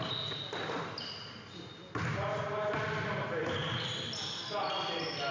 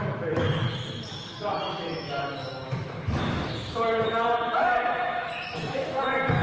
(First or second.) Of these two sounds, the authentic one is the first